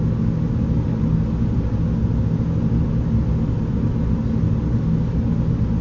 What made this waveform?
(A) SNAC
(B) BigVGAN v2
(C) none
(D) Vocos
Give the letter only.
C